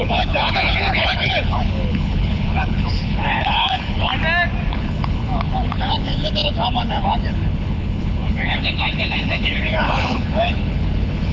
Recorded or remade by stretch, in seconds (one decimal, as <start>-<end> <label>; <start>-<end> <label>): 0.0-4.1 remade; 4.1-4.7 recorded; 4.7-11.3 remade